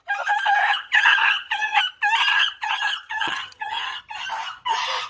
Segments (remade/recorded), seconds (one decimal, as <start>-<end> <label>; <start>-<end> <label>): 0.0-0.7 recorded; 0.7-1.8 remade; 1.8-2.3 recorded; 2.3-4.0 remade; 4.0-5.1 recorded